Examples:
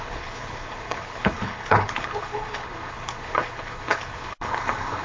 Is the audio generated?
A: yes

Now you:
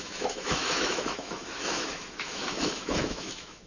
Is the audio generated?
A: yes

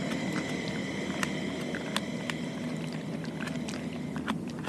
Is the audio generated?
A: no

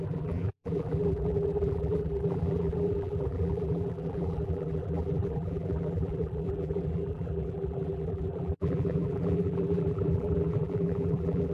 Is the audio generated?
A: yes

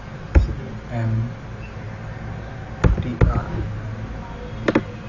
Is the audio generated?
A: no